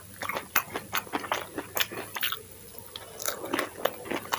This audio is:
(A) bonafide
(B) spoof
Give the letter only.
A